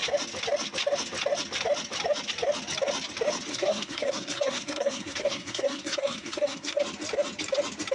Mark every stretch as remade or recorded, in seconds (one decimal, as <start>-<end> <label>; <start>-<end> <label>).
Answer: 0.0-3.5 recorded; 3.5-6.8 remade; 6.8-7.9 recorded